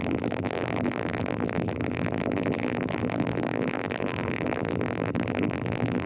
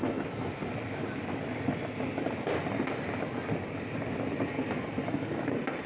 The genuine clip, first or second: second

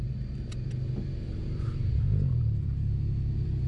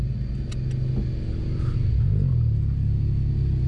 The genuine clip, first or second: second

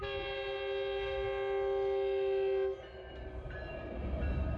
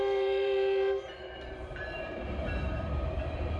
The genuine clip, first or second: first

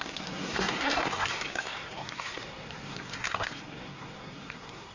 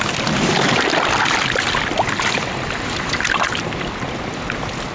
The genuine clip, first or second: second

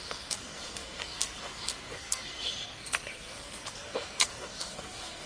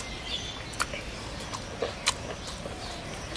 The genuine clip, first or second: second